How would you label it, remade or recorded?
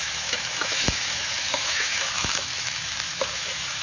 remade